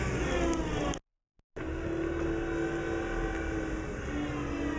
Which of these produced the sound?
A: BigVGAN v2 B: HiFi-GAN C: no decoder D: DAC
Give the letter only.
C